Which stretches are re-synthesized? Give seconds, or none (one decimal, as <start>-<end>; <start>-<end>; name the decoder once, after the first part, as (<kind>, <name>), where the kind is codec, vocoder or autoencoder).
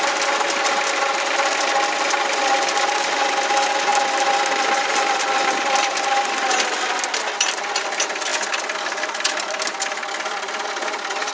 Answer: 3.9-6.5 (vocoder, BigVGAN v2); 8.3-9.7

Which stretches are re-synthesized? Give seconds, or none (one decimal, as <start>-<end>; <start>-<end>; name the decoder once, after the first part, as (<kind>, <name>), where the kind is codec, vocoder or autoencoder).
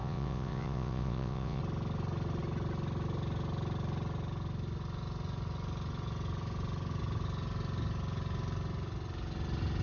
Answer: 0.0-1.6 (vocoder, WaveNeXt)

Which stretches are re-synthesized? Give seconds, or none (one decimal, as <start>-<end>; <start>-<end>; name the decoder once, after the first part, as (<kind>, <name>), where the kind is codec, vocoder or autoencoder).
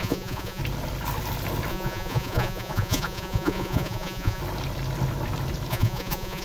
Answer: 0.0-0.6 (vocoder, Vocos); 1.7-4.4; 5.7-6.4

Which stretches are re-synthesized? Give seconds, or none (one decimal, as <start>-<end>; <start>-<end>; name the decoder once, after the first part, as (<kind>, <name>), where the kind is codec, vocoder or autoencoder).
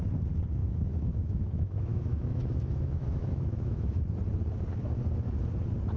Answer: 0.6-4.0 (autoencoder, DAC-VAE)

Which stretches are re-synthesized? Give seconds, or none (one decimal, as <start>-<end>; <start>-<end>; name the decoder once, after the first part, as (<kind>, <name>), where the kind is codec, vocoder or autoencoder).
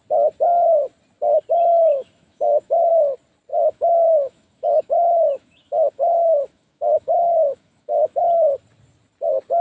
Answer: 1.7-2.9 (autoencoder, DAC-VAE); 3.5-8.2